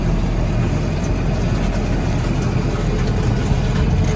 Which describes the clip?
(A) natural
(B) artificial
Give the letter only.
A